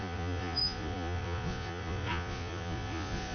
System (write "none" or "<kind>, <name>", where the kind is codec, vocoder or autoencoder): vocoder, Vocos